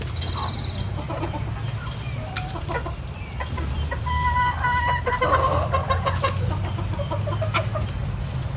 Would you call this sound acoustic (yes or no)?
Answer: yes